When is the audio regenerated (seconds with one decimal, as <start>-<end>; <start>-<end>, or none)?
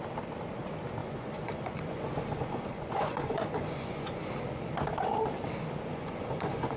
1.0-4.3; 5.9-6.8